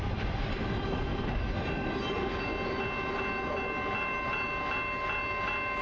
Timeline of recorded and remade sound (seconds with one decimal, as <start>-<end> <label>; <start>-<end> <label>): 0.0-5.8 recorded